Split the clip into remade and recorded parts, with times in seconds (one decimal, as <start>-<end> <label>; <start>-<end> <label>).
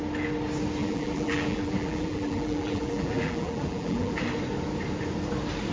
0.0-0.8 recorded; 0.8-4.2 remade; 4.2-5.7 recorded